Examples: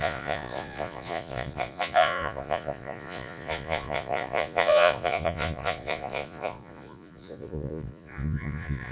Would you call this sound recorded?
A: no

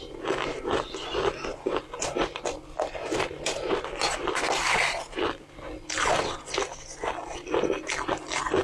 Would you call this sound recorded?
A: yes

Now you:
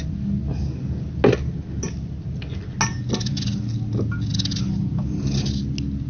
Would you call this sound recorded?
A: yes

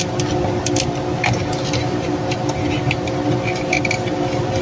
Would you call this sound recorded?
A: yes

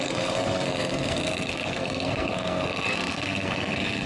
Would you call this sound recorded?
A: no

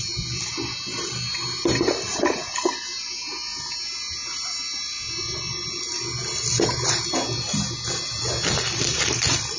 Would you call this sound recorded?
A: yes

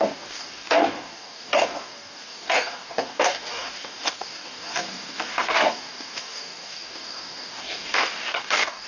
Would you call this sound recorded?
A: no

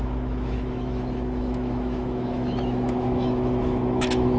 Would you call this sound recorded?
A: no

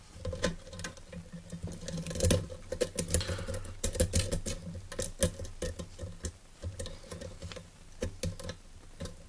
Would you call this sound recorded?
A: yes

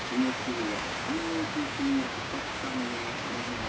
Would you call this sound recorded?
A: no